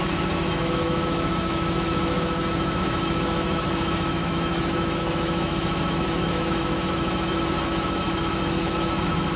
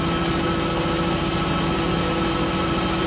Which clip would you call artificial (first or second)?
first